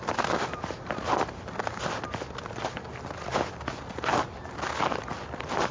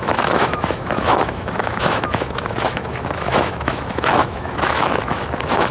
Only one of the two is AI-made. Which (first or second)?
second